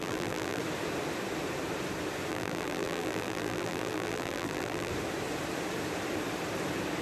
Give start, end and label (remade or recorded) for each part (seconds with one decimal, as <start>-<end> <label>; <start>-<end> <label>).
0.0-0.6 remade; 0.6-2.3 recorded; 2.3-4.9 remade; 4.9-7.0 recorded